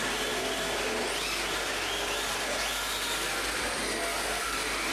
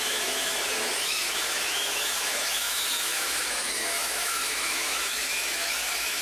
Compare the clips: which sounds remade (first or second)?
second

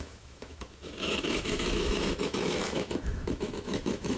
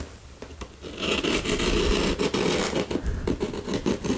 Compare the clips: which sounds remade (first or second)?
first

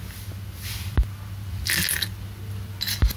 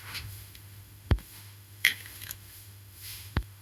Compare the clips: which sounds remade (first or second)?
second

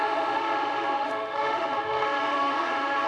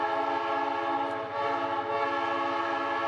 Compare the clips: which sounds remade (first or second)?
first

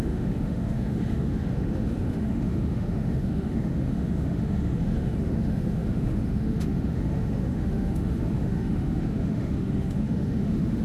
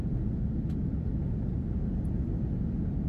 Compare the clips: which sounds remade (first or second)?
first